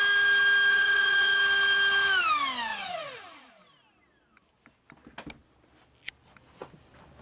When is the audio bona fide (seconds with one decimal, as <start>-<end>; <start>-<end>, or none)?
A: 0.0-0.7; 1.4-2.7; 3.5-7.2

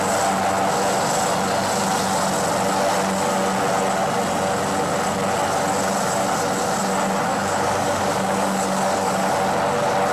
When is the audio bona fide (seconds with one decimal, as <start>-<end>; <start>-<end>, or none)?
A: 0.0-7.3; 9.3-10.1

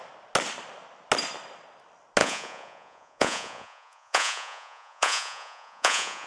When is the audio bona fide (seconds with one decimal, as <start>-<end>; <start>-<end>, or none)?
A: 0.0-2.2

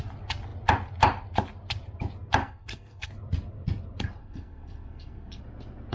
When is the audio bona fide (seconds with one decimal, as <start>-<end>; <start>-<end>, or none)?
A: 0.0-2.4; 3.1-4.2; 5.4-5.9

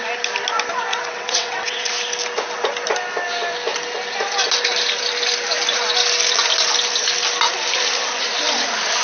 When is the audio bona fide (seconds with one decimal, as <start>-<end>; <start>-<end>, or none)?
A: 0.0-0.9; 1.9-9.0

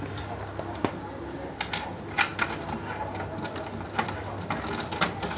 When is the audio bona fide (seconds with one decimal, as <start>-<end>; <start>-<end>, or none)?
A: 0.0-5.4

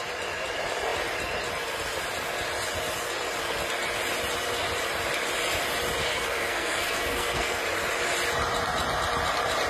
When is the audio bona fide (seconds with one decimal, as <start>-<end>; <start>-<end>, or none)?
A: 0.0-6.0; 7.6-9.7

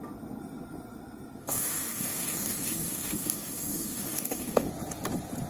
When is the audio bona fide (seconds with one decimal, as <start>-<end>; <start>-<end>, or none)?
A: 0.0-1.4; 4.7-5.5